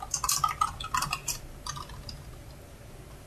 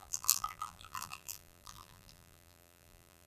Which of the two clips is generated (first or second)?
second